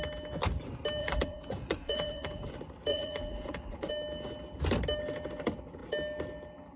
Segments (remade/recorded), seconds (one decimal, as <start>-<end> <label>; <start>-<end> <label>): 0.0-1.0 recorded; 1.0-2.5 remade; 2.5-2.9 recorded; 2.9-3.9 remade; 3.9-6.8 recorded